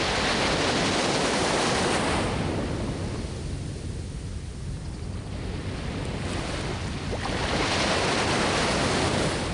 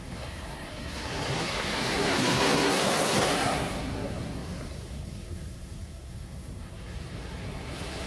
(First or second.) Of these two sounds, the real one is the first